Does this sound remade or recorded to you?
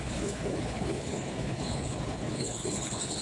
remade